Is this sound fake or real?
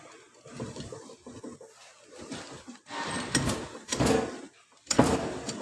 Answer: fake